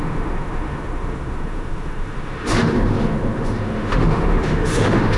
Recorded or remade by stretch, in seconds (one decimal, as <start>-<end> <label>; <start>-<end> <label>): 0.0-5.2 remade